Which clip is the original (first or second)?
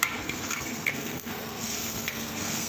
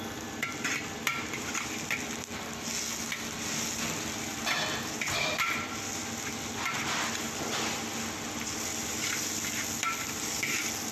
second